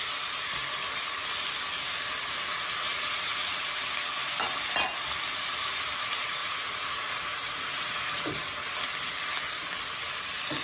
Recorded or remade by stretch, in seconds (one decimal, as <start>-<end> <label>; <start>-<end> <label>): 0.0-2.9 recorded; 2.9-3.7 remade; 3.7-6.4 recorded; 6.4-8.4 remade; 8.4-10.6 recorded